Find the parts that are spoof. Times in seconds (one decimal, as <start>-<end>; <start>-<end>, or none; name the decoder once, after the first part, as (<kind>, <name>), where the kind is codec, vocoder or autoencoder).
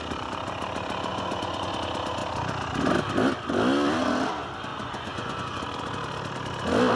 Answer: 1.1-1.7 (vocoder, Vocos); 4.7-5.6